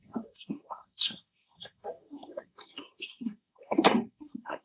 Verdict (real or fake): fake